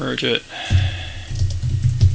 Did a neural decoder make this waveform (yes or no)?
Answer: no